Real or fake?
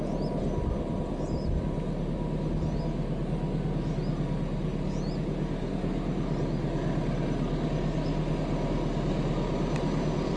real